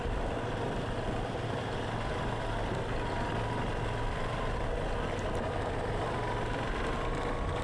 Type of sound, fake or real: real